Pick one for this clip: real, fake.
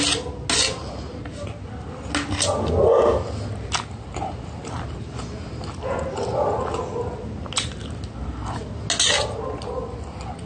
real